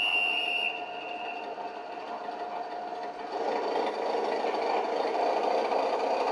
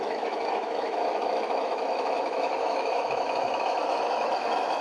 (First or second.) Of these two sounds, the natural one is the first